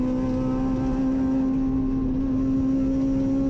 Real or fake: real